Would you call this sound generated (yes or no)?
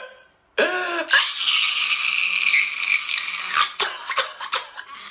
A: no